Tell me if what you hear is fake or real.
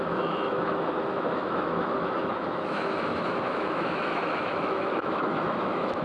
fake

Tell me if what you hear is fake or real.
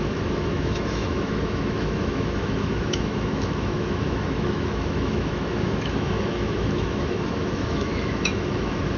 fake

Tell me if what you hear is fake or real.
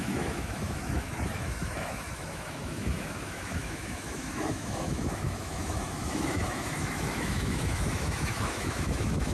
fake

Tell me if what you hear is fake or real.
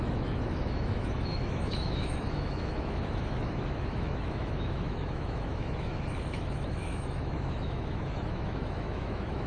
fake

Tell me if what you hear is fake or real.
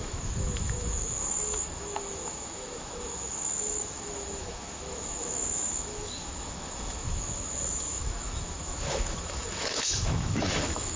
fake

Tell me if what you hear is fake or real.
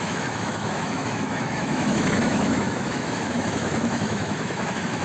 fake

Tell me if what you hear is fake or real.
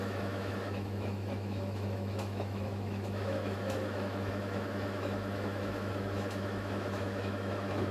fake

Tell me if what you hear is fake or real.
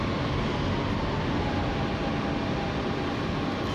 real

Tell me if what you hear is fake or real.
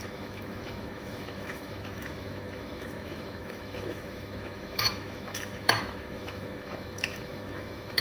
fake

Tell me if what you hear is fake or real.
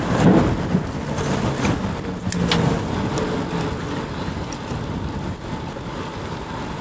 real